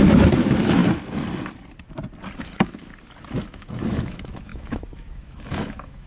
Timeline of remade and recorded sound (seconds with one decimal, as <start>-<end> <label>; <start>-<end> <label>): 0.0-0.8 remade; 0.8-2.4 recorded; 2.4-2.9 remade; 2.9-3.4 recorded; 3.4-6.1 remade